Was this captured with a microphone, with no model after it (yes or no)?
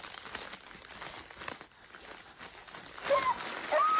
yes